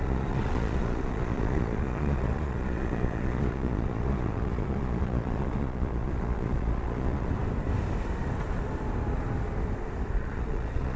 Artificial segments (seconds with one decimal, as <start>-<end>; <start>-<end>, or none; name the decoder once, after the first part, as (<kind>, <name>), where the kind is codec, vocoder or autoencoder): 0.0-7.3 (vocoder, Vocos); 10.1-11.0